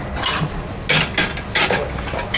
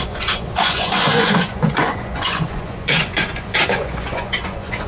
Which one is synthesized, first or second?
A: second